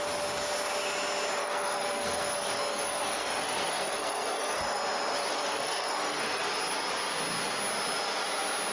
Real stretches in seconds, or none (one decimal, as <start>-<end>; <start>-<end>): 0.0-1.4; 4.8-5.3; 6.4-8.7